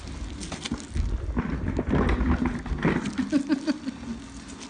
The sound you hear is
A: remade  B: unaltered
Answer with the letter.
B